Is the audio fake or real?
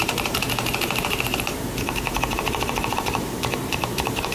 fake